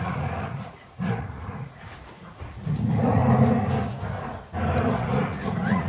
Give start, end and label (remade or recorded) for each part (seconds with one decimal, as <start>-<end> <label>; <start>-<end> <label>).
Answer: 0.0-3.2 remade; 3.2-4.9 recorded; 4.9-5.9 remade